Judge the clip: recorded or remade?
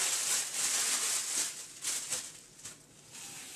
recorded